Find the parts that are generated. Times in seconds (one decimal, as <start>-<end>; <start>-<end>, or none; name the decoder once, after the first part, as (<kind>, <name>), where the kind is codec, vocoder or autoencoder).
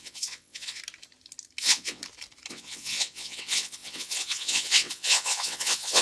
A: 0.0-0.8 (vocoder, WaveNeXt); 1.6-2.0; 2.5-6.0